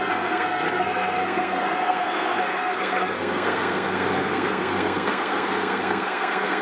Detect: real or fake fake